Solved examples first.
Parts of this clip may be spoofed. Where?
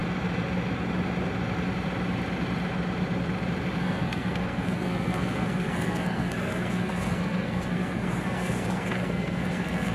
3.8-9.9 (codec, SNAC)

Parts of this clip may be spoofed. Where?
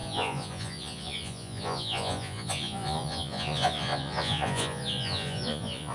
0.0-5.9 (vocoder, Vocos)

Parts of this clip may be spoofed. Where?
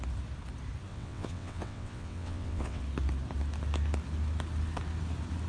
0.9-2.8 (vocoder, WaveNeXt)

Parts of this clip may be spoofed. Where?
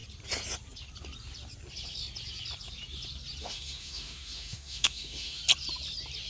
3.4-5.4 (autoencoder, DAC-VAE)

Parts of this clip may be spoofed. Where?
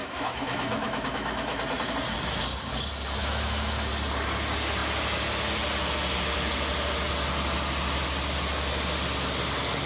0.0-1.6 (autoencoder, DAC-VAE); 3.2-3.9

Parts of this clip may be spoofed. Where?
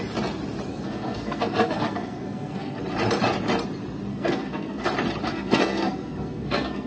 0.7-2.8 (codec, SNAC); 4.1-4.8; 5.3-6.9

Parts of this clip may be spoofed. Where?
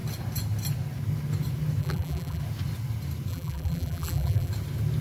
1.8-2.4 (vocoder, BigVGAN v2); 3.3-4.5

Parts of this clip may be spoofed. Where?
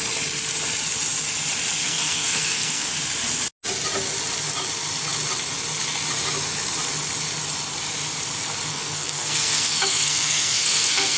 1.8-2.9 (codec, SNAC); 8.7-11.2